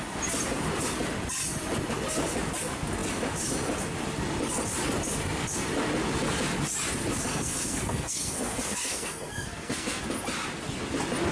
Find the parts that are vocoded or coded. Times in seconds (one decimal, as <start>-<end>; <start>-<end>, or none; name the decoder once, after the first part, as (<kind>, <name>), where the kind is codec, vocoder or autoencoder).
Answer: 7.3-10.0 (codec, SNAC)

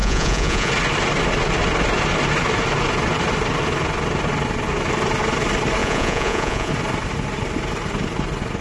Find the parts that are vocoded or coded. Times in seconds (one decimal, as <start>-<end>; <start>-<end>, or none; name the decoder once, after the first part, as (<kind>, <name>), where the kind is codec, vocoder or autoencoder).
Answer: 0.0-0.7 (vocoder, Vocos); 5.8-6.7

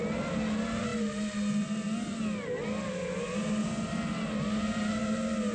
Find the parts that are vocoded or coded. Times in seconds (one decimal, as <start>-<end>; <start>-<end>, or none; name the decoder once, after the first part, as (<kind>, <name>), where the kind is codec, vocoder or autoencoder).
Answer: none

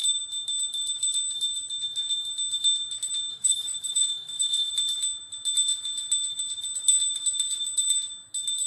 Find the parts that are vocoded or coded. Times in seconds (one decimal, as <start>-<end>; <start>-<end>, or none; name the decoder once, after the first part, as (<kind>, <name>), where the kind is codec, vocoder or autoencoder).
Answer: 3.3-4.7 (autoencoder, DAC-VAE)

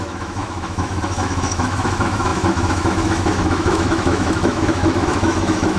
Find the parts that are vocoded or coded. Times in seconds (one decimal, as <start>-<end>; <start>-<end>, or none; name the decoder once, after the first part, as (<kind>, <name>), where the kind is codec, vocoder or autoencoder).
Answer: 0.0-5.8 (autoencoder, DAC-VAE)